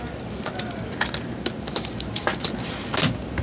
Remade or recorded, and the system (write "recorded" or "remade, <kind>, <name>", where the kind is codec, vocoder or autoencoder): recorded